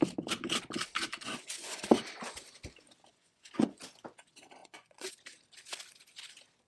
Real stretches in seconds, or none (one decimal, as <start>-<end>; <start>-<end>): 0.0-1.0; 2.0-3.1; 3.8-4.6; 5.1-6.7